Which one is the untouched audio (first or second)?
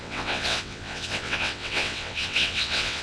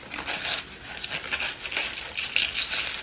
second